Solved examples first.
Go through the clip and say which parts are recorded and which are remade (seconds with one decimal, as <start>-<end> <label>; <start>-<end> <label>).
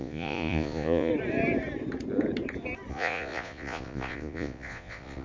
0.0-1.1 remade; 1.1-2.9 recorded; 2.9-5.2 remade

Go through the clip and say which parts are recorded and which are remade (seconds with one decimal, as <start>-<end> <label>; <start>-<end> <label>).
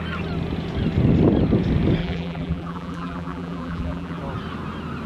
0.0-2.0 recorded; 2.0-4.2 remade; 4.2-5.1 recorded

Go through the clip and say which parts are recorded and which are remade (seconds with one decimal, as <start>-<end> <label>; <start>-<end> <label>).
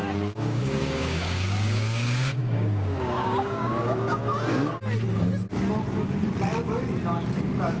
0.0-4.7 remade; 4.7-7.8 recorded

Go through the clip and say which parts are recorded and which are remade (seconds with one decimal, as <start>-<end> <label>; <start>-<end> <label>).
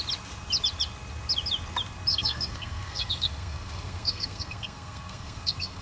0.0-2.1 recorded; 2.1-5.8 remade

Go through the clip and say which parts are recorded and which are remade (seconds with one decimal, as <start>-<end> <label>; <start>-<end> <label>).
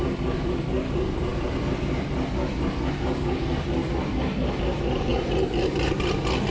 0.0-5.1 recorded; 5.1-6.1 remade; 6.1-6.5 recorded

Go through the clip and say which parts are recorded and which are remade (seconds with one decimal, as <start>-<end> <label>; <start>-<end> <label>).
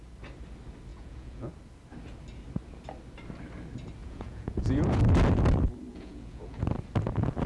0.0-0.9 recorded; 0.9-1.5 remade; 1.5-4.0 recorded; 4.0-5.0 remade; 5.0-5.9 recorded; 5.9-6.6 remade; 6.6-7.5 recorded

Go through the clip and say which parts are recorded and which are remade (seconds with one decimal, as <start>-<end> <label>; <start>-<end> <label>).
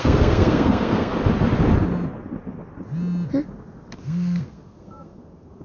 0.0-1.1 remade; 1.1-4.0 recorded; 4.0-5.6 remade